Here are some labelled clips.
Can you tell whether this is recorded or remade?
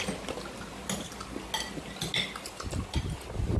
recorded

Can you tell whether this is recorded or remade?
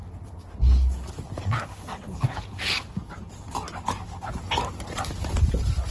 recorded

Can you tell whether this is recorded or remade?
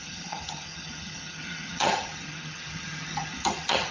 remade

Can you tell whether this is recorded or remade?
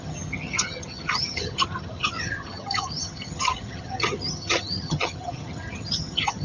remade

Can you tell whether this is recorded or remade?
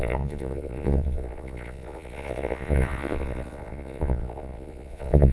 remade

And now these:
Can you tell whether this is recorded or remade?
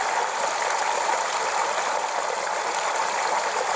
recorded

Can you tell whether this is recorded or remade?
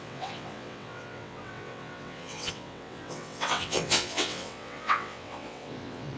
remade